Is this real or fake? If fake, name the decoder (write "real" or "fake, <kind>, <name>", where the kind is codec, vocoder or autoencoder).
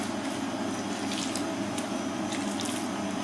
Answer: real